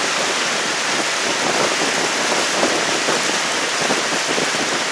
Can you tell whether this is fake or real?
real